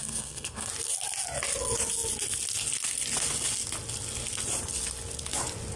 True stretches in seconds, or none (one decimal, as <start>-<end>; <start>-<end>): 0.7-5.8